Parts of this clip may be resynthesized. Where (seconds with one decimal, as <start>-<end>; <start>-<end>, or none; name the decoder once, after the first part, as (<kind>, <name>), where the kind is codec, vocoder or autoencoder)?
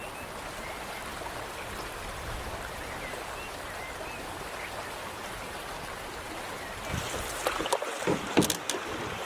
none